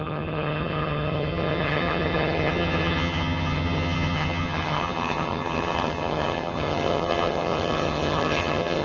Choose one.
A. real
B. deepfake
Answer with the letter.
B